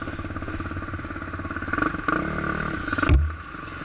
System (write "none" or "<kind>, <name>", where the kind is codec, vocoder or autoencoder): none